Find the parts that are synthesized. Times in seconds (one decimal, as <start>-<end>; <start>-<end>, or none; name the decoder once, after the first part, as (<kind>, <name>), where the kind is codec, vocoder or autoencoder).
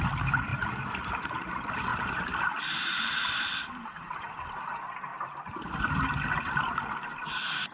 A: 0.5-1.5 (vocoder, BigVGAN v2); 1.9-3.1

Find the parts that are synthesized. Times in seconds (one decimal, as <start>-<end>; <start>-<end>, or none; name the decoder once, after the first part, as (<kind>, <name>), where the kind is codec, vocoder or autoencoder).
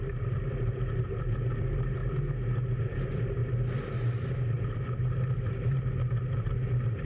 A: 0.0-2.0 (vocoder, BigVGAN v2); 2.8-3.4; 3.9-7.0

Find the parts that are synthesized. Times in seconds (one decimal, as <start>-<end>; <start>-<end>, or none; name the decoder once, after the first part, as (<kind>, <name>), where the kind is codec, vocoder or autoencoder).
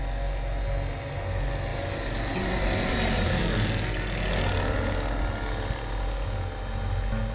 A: 1.7-3.4 (vocoder, BigVGAN v2)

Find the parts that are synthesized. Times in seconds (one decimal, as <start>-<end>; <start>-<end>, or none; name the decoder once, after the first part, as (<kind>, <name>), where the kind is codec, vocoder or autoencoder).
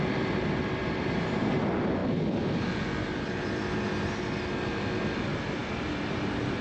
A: 0.8-1.5 (vocoder, BigVGAN v2)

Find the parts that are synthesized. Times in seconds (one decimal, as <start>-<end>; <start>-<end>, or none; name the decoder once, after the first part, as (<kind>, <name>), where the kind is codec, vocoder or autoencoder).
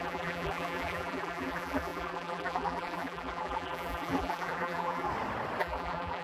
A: 0.0-5.1 (vocoder, BigVGAN v2); 5.6-6.2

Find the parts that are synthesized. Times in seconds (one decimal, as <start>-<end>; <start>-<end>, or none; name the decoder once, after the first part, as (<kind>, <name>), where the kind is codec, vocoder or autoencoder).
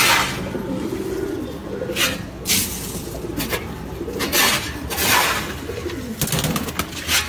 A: none